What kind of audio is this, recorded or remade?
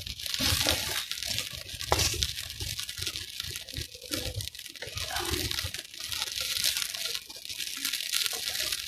recorded